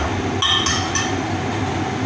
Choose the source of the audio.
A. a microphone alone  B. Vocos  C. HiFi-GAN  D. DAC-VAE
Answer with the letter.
A